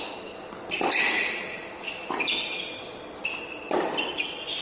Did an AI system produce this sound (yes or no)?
no